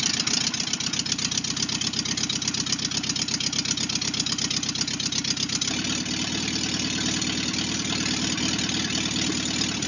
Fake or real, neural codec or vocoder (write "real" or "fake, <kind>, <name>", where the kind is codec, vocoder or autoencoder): real